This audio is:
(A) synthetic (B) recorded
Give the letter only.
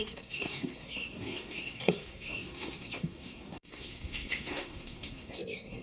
A